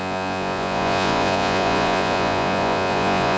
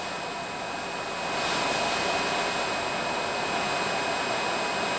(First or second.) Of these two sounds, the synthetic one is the first